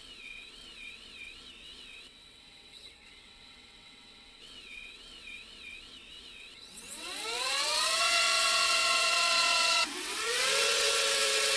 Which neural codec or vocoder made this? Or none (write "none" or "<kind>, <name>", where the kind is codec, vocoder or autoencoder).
vocoder, WaveNeXt